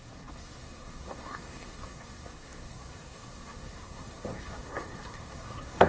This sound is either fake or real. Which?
fake